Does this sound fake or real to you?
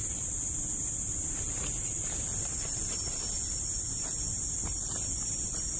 real